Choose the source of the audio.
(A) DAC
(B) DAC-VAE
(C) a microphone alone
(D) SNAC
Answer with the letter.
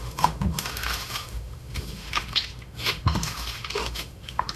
B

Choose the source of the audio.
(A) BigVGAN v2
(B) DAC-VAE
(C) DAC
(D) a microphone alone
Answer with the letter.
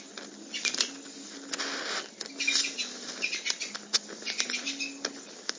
D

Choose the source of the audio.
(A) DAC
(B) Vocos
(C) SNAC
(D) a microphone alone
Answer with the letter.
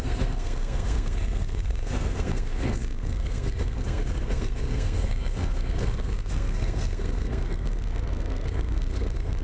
C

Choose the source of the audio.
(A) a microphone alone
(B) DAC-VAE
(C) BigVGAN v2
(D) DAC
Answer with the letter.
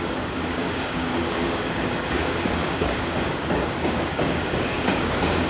D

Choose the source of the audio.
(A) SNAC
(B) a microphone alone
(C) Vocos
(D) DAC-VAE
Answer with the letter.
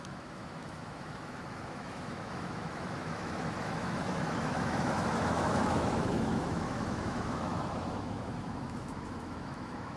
D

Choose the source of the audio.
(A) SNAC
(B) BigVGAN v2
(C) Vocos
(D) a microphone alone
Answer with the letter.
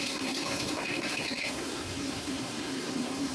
A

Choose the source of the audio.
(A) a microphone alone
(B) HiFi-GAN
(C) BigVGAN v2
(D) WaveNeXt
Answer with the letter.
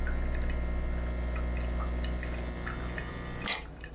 A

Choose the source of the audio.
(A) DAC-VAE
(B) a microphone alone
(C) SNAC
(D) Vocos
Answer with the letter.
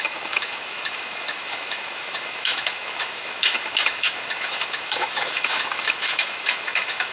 A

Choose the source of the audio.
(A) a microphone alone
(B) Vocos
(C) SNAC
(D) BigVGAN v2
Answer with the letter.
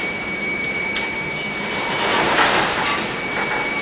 D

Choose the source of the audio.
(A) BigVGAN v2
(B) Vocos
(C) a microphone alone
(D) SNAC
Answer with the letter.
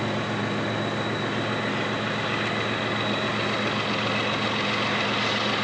C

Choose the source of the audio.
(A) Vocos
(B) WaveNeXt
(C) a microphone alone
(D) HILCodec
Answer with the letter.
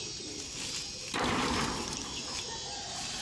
C